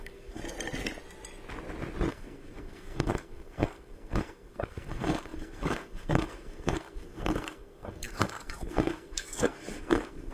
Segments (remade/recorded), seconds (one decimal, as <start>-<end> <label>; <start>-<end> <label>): 0.0-0.4 remade; 0.4-2.1 recorded; 2.1-10.3 remade